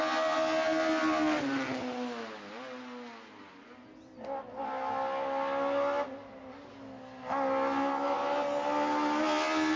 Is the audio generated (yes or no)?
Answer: no